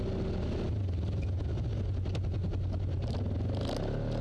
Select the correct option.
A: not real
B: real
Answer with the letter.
B